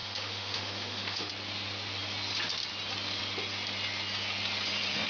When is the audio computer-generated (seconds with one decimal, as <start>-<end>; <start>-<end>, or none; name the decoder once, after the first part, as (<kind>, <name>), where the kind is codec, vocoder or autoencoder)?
0.0-1.3 (autoencoder, DAC-VAE)